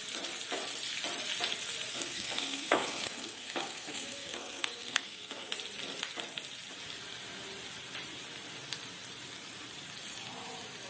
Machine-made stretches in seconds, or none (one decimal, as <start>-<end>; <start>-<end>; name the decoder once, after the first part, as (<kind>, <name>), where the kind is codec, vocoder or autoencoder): 1.9-5.5 (codec, SNAC)